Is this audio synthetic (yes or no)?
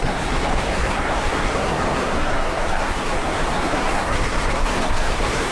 yes